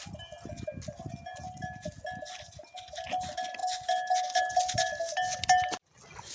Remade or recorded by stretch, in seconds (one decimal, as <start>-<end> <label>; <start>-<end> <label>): 0.0-6.3 recorded

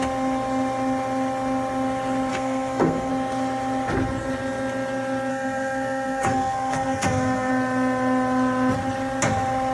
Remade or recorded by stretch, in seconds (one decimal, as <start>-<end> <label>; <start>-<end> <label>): 0.0-2.3 recorded; 2.3-3.1 remade; 3.1-5.3 recorded; 5.3-7.5 remade; 7.5-9.7 recorded

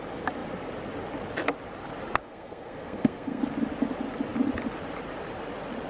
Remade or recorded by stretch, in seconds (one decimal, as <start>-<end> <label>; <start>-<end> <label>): 0.0-2.2 recorded; 2.2-3.4 remade; 3.4-5.9 recorded

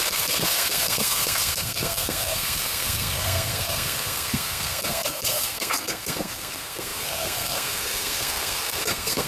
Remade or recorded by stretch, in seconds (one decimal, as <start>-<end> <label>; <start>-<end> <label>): 0.0-9.3 remade